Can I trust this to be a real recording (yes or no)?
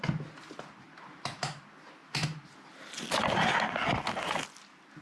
yes